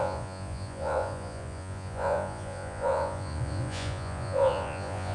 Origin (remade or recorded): remade